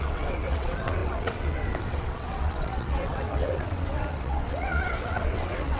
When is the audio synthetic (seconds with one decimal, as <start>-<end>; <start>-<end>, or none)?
0.0-5.8